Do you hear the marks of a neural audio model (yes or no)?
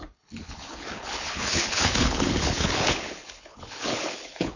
yes